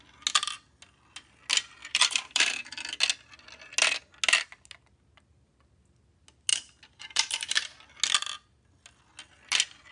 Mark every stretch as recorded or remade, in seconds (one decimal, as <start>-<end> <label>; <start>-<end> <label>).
0.0-1.8 recorded; 1.8-2.8 remade; 2.8-6.5 recorded; 6.5-7.5 remade; 7.5-9.9 recorded